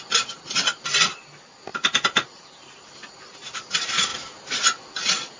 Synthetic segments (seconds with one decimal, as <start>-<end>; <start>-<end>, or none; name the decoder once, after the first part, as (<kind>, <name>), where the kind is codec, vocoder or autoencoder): 1.7-3.1 (vocoder, BigVGAN v2)